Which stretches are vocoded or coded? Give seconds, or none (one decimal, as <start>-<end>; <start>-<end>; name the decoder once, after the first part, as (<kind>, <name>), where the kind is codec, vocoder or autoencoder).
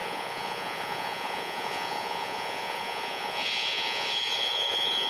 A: 0.0-5.1 (vocoder, Vocos)